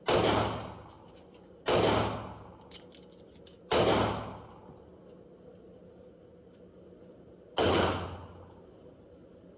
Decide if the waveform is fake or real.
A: real